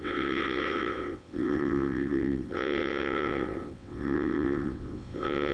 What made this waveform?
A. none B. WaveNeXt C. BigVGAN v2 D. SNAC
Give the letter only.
B